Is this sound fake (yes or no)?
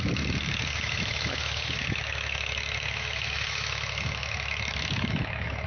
yes